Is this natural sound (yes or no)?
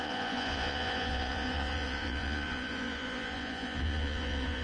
no